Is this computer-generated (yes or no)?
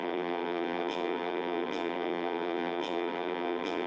yes